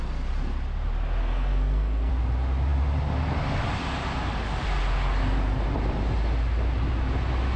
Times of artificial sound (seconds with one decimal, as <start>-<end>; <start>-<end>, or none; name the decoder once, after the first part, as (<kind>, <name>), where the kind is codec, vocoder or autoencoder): 1.2-2.1 (codec, SNAC)